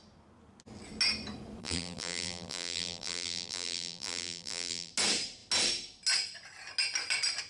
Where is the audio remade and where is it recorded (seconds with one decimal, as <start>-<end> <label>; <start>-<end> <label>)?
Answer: 0.0-1.6 recorded; 1.6-4.9 remade; 4.9-7.5 recorded